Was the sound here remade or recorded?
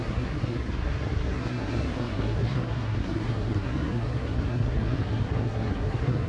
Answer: remade